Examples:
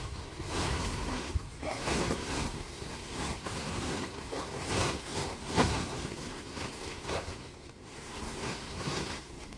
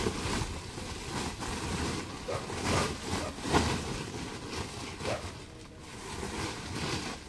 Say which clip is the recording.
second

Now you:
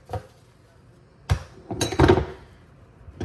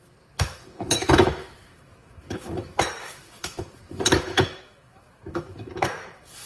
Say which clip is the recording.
first